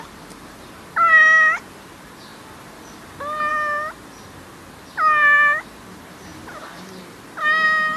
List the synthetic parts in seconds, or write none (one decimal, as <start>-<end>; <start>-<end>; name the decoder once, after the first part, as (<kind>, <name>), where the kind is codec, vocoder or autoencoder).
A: none